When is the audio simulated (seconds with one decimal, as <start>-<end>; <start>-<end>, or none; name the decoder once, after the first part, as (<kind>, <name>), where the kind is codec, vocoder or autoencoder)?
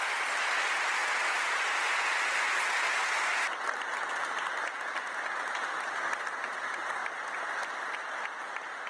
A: none